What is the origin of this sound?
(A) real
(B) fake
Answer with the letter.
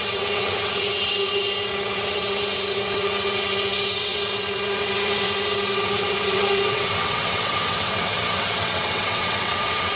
B